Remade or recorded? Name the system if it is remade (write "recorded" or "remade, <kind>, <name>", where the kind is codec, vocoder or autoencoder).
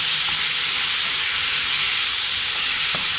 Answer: recorded